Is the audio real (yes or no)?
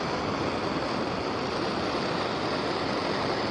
yes